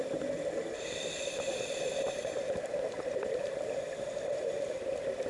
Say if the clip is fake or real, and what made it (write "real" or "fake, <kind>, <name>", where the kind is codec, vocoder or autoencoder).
fake, vocoder, BigVGAN v2